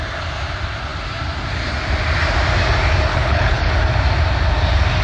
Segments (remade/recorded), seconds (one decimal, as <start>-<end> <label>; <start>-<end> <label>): 0.0-3.1 recorded; 3.1-3.7 remade; 3.7-5.0 recorded